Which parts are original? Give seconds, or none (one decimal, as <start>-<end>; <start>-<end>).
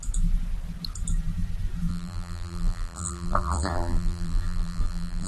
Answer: 0.0-1.9